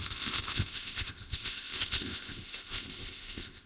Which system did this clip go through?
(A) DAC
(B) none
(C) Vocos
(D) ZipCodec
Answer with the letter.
D